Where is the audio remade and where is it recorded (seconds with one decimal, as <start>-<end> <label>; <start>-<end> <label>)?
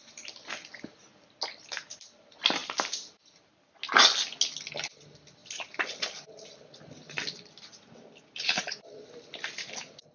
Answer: 0.0-10.1 recorded